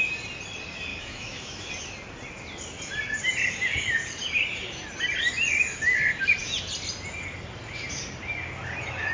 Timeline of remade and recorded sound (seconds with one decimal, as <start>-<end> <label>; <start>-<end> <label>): 0.0-0.9 recorded; 0.9-1.7 remade; 1.7-9.1 recorded